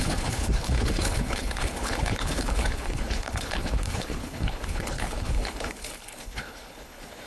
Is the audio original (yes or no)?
no